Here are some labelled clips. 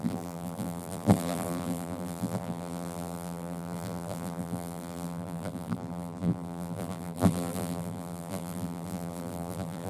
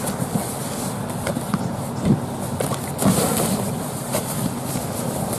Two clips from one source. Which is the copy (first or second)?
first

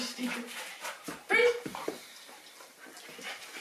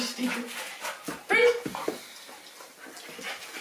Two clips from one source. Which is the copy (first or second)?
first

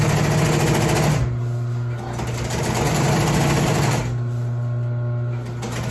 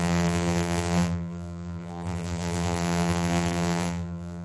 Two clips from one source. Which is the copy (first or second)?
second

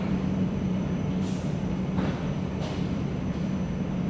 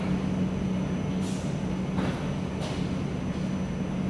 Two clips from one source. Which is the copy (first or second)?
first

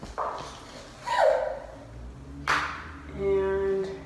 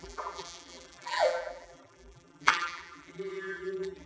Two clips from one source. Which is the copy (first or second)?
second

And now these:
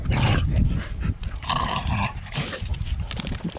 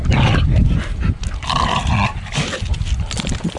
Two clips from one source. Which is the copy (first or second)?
first